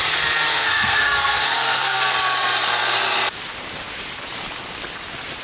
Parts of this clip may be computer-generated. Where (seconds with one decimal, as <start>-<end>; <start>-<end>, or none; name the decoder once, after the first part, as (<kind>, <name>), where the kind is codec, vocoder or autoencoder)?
0.5-2.0 (codec, SNAC)